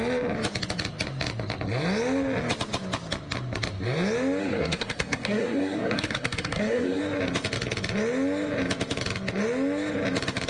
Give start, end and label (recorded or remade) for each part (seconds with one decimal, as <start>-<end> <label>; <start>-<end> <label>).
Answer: 0.0-4.4 recorded; 4.4-7.0 remade; 7.0-10.5 recorded